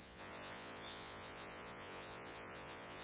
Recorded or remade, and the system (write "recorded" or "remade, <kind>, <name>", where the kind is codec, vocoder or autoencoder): remade, vocoder, Vocos